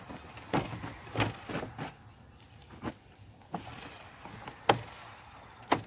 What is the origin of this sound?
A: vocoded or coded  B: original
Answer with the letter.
B